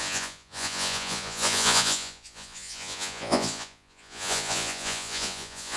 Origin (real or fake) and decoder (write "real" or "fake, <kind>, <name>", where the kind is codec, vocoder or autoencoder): fake, vocoder, Vocos